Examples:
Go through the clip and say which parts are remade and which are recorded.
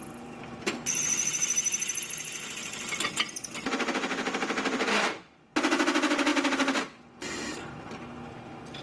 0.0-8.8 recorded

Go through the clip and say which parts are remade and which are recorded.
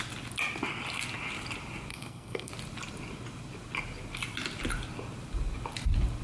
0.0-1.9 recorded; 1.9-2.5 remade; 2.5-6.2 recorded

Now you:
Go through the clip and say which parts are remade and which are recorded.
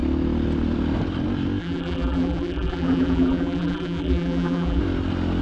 0.0-1.6 recorded; 1.6-4.8 remade; 4.8-5.4 recorded